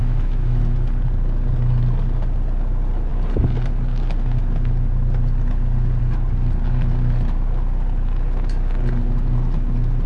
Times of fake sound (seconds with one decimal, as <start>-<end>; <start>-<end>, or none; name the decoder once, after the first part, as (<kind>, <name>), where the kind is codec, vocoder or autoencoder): 0.0-0.6 (autoencoder, DAC-VAE)